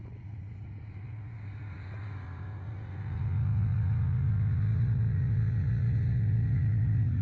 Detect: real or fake fake